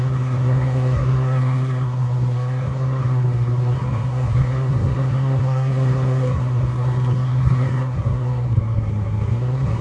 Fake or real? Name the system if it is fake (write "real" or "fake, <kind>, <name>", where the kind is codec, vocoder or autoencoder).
fake, codec, SNAC